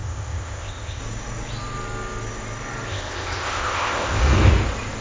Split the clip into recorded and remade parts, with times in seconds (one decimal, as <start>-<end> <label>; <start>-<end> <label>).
0.0-1.0 remade; 1.0-2.9 recorded; 2.9-4.2 remade; 4.2-5.0 recorded